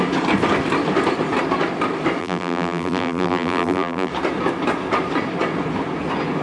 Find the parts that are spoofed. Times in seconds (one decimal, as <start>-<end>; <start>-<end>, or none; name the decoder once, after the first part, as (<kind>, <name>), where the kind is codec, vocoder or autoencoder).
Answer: 2.2-4.1 (vocoder, BigVGAN v2)